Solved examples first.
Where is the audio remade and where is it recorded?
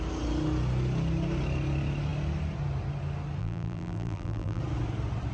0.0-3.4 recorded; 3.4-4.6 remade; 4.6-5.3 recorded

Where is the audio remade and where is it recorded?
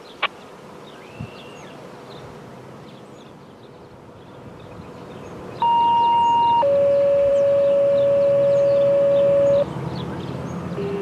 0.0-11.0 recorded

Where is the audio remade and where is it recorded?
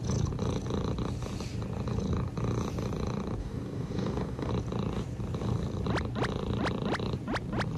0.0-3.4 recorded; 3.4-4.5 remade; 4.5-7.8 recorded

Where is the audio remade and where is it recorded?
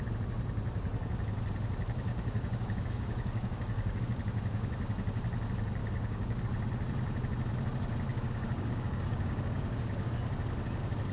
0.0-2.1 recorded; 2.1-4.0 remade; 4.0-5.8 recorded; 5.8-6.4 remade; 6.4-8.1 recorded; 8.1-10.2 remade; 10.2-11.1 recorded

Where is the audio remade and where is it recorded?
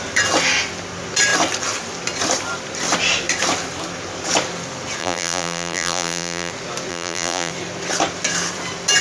0.0-5.0 recorded; 5.0-6.5 remade; 6.5-6.9 recorded; 6.9-7.5 remade; 7.5-9.0 recorded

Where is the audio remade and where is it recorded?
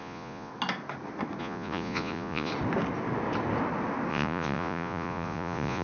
0.0-0.5 remade; 0.5-1.4 recorded; 1.4-2.5 remade; 2.5-4.1 recorded; 4.1-5.8 remade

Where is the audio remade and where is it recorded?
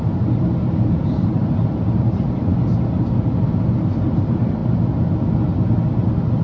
0.0-2.5 remade; 2.5-3.9 recorded; 3.9-4.6 remade; 4.6-6.4 recorded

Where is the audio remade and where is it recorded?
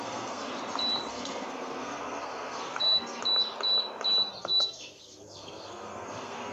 0.0-0.5 remade; 0.5-1.1 recorded; 1.1-3.2 remade; 3.2-4.4 recorded; 4.4-6.5 remade